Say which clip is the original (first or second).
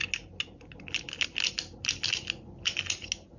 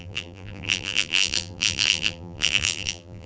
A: first